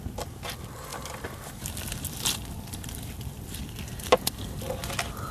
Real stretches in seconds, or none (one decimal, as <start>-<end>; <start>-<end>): 0.0-0.9; 3.6-5.3